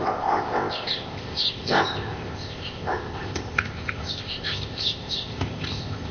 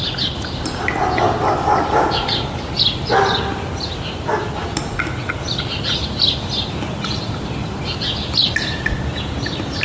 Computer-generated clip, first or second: first